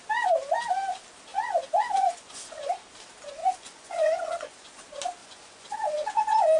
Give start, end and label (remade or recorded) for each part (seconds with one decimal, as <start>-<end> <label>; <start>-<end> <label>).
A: 0.0-1.3 recorded; 1.3-2.7 remade; 2.7-3.4 recorded; 3.4-4.8 remade; 4.8-5.2 recorded; 5.2-6.6 remade